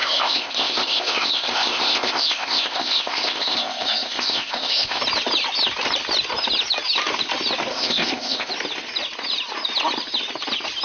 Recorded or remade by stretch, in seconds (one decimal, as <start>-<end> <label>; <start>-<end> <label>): 0.0-5.0 remade; 5.0-7.7 recorded; 7.7-8.5 remade; 8.5-10.8 recorded